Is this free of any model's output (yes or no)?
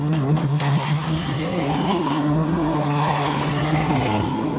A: no